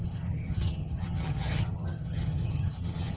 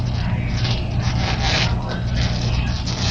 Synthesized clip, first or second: first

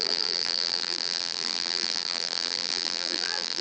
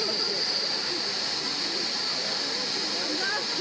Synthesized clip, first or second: first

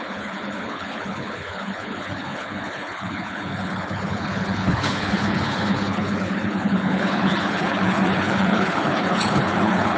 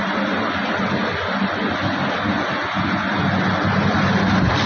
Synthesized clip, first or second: first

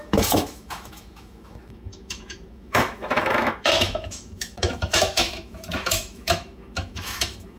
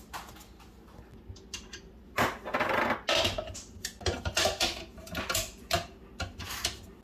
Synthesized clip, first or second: first